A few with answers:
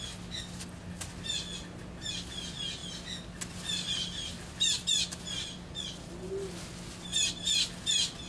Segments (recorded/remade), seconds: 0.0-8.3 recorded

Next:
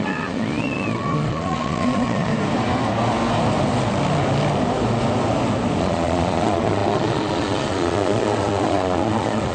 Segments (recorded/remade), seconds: 0.0-2.3 remade; 2.3-5.8 recorded; 5.8-9.5 remade

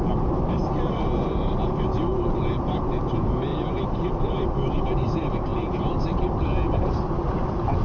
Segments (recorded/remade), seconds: 0.0-7.8 recorded